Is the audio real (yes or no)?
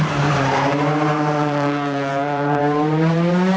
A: no